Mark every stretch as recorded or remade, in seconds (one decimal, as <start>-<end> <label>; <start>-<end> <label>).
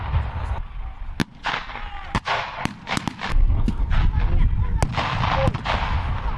0.0-3.3 recorded; 3.3-3.9 remade; 3.9-6.4 recorded